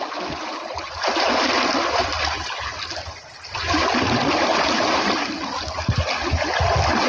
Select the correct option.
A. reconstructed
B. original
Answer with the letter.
B